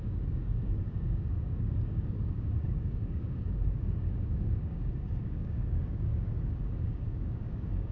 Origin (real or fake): fake